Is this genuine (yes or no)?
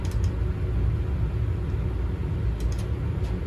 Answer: yes